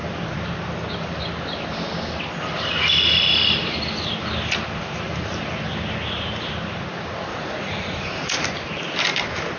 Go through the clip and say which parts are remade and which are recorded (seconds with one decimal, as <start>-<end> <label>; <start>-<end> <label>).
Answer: 0.0-7.3 recorded; 7.3-8.2 remade; 8.2-9.6 recorded